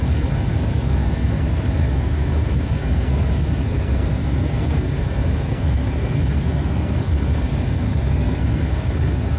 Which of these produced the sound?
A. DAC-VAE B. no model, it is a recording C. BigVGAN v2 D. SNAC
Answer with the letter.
D